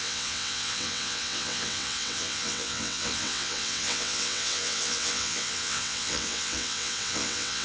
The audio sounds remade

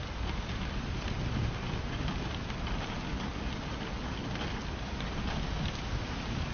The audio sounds recorded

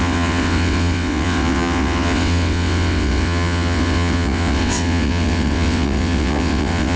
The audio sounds remade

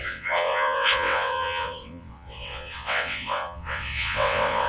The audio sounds remade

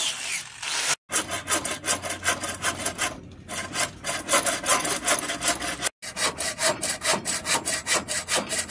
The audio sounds recorded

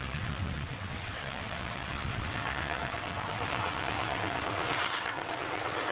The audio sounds remade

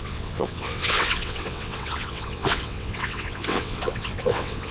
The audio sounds remade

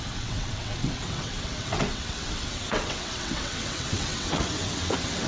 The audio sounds remade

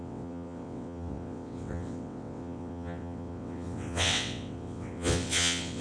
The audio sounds remade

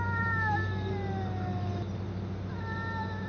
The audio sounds recorded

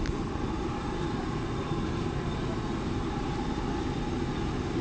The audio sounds recorded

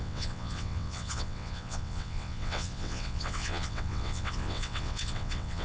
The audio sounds remade